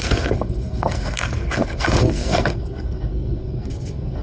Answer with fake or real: fake